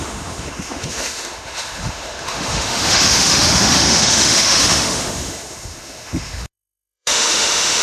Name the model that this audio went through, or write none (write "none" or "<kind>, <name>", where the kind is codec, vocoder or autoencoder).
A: autoencoder, DAC-VAE